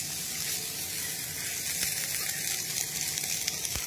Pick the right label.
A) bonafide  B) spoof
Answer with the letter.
A